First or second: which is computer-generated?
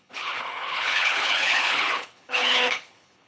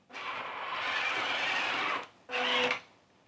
first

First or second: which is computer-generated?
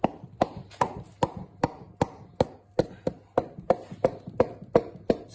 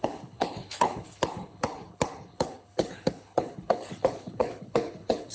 second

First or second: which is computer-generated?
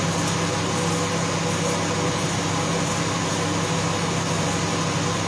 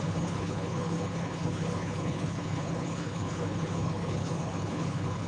second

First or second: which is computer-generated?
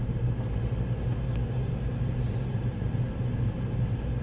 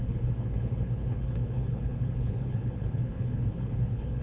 second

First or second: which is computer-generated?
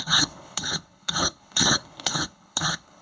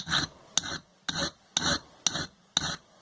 first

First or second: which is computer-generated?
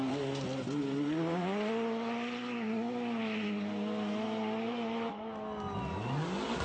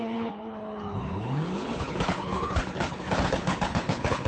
second